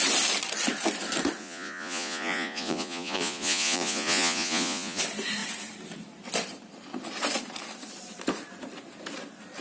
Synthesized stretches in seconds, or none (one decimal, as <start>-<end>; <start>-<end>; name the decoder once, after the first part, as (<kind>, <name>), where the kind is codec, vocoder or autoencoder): 1.4-5.0 (vocoder, Vocos)